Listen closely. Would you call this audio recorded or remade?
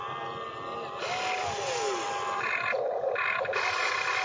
recorded